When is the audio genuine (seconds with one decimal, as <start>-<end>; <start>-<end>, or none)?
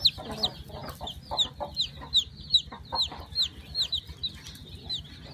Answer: 0.0-5.3